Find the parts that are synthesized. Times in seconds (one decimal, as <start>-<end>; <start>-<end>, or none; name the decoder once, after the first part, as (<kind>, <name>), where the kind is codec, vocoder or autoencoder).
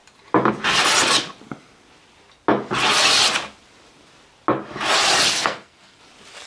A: 5.3-6.0 (codec, SNAC)